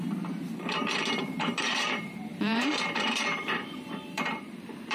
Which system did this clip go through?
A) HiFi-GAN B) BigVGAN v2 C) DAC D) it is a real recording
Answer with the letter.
B